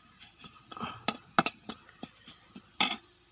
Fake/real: real